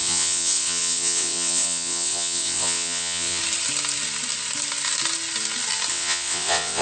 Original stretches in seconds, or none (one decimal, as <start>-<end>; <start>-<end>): 3.4-5.9

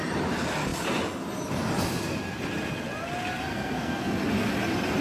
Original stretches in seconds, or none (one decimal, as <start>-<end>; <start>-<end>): 0.0-3.5; 4.1-5.0

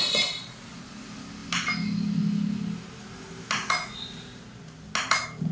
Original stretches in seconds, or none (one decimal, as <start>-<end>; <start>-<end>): 0.0-5.5

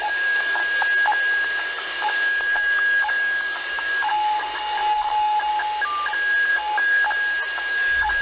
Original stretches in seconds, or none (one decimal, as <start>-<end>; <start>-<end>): 0.6-1.6; 5.5-6.5; 7.0-7.7

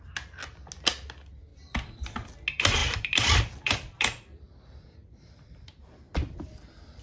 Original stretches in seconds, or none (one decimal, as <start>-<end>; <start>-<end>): 0.0-1.5; 2.4-2.8